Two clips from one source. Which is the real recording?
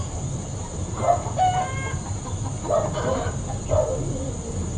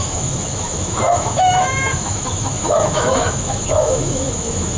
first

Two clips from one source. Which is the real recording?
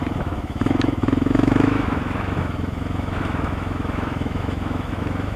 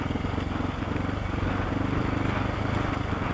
second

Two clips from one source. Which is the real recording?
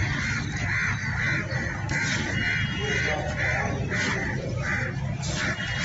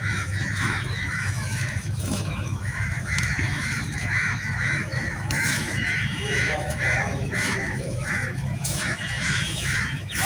first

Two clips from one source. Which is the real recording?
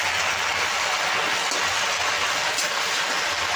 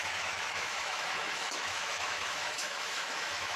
first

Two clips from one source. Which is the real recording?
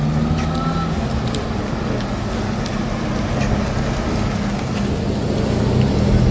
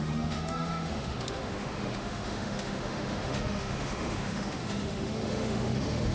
first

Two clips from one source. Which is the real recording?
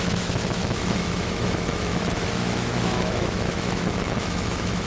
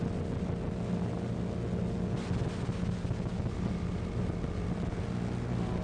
second